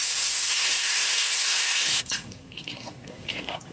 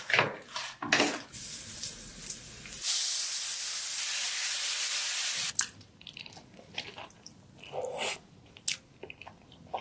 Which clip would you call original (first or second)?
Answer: second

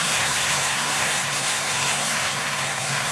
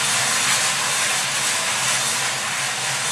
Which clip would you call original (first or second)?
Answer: second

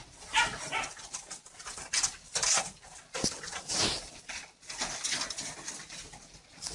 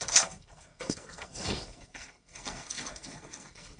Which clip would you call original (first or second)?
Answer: first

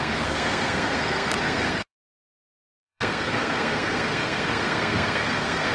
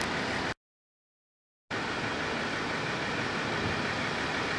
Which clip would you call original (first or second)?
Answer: second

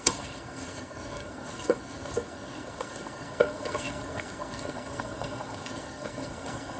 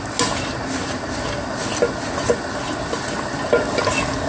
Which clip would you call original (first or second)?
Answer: second